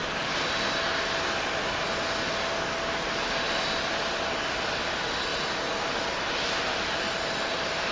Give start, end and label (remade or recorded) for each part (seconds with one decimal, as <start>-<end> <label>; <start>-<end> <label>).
0.0-7.9 recorded